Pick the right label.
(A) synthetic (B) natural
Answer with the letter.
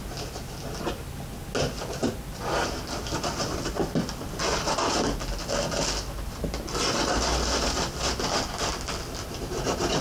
B